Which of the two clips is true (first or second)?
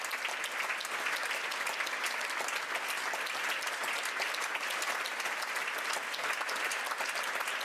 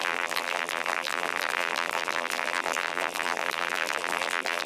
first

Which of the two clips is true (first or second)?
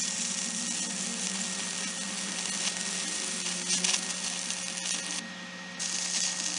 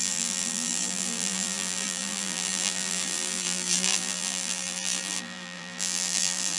first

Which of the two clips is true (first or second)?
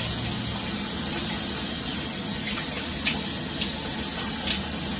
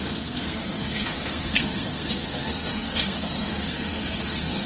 first